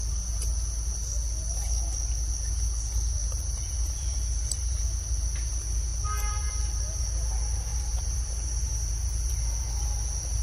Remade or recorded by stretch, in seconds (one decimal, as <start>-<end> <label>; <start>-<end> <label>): 0.0-3.2 recorded; 3.2-4.8 remade; 4.8-5.9 recorded; 5.9-6.5 remade; 6.5-7.7 recorded; 7.7-9.3 remade; 9.3-10.4 recorded